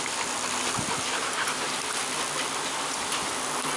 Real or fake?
real